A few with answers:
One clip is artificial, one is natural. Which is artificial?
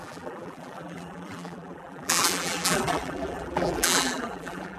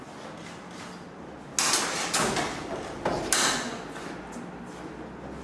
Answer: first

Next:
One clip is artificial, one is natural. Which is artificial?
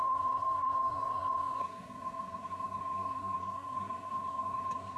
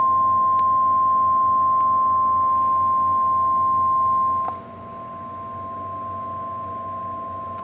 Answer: first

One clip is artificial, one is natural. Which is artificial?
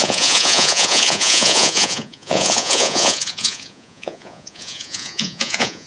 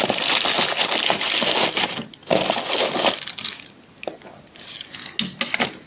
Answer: first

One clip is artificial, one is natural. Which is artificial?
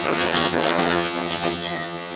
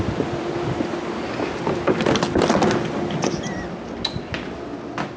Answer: first